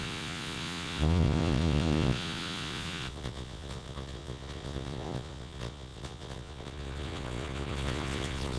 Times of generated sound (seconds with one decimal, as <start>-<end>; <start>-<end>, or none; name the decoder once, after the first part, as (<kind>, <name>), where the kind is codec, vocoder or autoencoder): 0.0-8.6 (vocoder, Vocos)